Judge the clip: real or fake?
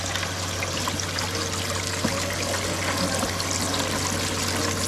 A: real